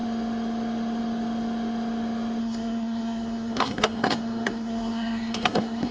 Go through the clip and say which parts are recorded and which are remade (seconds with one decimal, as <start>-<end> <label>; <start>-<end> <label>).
0.0-2.4 recorded; 2.4-5.9 remade

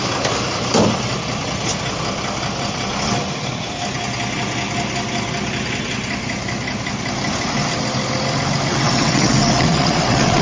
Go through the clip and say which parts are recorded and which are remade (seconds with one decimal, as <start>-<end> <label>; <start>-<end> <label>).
0.0-8.7 recorded; 8.7-10.4 remade

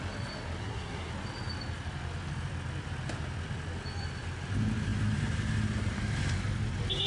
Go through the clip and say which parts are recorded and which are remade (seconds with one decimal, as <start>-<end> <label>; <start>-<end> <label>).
0.0-0.6 recorded; 0.6-1.1 remade; 1.1-7.1 recorded

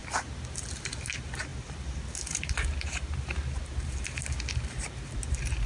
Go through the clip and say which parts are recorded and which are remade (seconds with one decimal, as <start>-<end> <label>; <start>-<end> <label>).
0.0-1.1 recorded; 1.1-5.7 remade